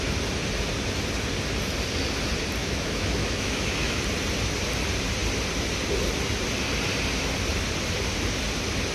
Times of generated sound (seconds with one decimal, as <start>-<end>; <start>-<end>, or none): 2.6-4.0